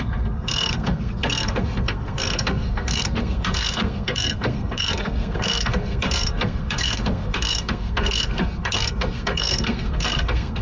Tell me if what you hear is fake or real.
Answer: fake